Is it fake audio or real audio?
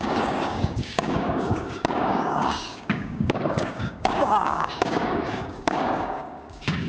fake